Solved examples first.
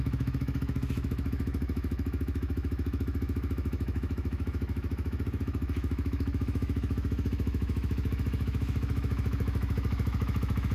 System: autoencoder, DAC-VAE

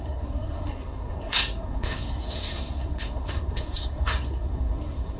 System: codec, SNAC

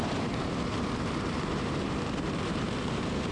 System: vocoder, BigVGAN v2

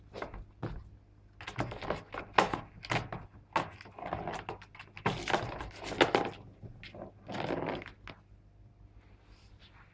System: none